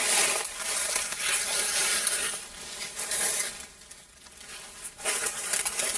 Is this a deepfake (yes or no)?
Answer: no